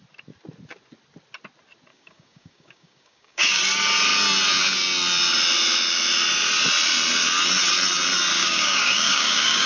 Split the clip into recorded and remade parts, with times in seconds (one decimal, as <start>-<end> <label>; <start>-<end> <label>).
0.0-1.9 recorded; 1.9-3.6 remade; 3.6-8.4 recorded; 8.4-9.7 remade